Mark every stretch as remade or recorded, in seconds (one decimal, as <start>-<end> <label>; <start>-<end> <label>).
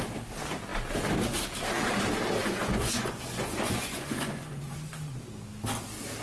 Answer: 0.0-2.4 recorded; 2.4-4.9 remade; 4.9-6.2 recorded